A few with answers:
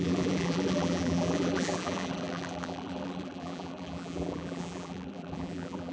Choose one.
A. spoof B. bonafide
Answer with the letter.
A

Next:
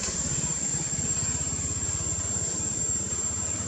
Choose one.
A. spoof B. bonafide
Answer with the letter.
A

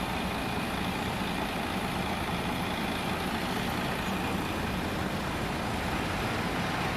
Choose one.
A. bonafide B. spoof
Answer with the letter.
A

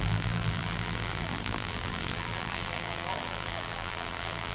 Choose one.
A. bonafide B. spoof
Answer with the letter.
B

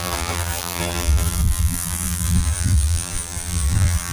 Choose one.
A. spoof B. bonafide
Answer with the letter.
A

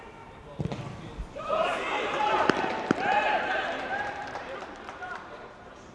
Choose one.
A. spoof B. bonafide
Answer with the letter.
A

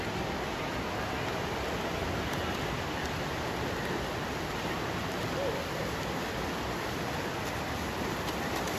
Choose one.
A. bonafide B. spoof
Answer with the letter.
A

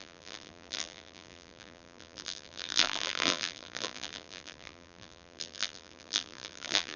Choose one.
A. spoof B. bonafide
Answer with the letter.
A